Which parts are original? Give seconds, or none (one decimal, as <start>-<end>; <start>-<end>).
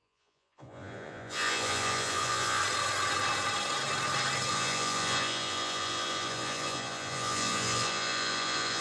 2.6-4.5